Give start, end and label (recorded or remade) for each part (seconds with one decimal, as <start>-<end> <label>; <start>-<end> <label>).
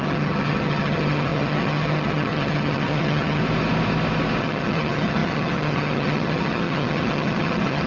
0.0-3.4 remade; 3.4-4.4 recorded; 4.4-7.9 remade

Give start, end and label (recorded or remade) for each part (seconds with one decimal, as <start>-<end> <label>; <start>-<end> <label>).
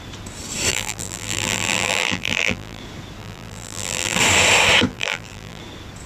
0.0-0.7 recorded; 0.7-2.8 remade; 2.8-3.2 recorded; 3.2-4.2 remade; 4.2-4.9 recorded; 4.9-5.6 remade; 5.6-6.1 recorded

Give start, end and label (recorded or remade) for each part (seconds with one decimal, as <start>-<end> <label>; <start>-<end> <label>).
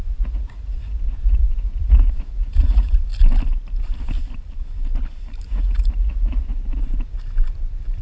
0.0-3.1 remade; 3.1-5.4 recorded; 5.4-6.5 remade; 6.5-8.0 recorded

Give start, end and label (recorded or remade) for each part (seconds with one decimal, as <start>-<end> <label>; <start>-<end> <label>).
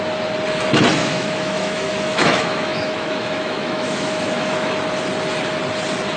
0.0-1.0 recorded; 1.0-4.7 remade; 4.7-6.2 recorded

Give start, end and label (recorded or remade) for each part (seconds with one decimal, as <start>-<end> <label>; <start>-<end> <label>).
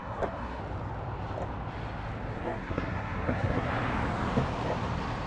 0.0-0.6 remade; 0.6-2.3 recorded; 2.3-3.7 remade; 3.7-5.3 recorded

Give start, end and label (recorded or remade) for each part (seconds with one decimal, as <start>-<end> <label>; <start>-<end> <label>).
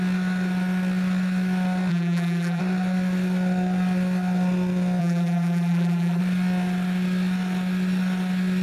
0.0-1.9 recorded; 1.9-2.6 remade; 2.6-5.0 recorded; 5.0-6.2 remade; 6.2-8.6 recorded